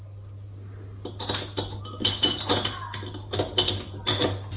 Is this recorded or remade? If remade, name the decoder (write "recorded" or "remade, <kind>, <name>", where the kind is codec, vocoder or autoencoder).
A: recorded